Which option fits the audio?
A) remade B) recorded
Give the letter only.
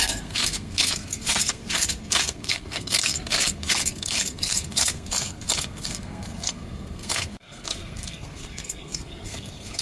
A